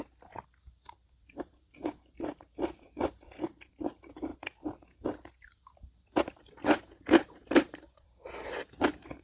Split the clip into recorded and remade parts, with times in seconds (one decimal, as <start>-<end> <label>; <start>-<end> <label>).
0.0-9.2 recorded

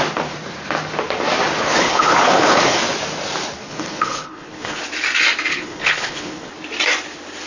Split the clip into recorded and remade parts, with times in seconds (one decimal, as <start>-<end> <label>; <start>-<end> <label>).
0.0-1.6 recorded; 1.6-2.8 remade; 2.8-3.6 recorded; 3.6-4.8 remade; 4.8-5.5 recorded; 5.5-6.5 remade; 6.5-7.5 recorded

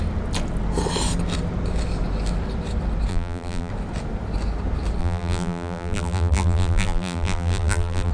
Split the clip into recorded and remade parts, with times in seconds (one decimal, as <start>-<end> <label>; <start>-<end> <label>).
0.0-3.1 recorded; 3.1-3.7 remade; 3.7-5.0 recorded; 5.0-8.1 remade

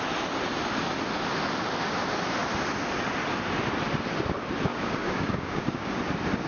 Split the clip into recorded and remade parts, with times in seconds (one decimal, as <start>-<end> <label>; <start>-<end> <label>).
0.0-4.7 recorded; 4.7-6.0 remade; 6.0-6.5 recorded